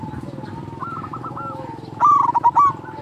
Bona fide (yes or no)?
yes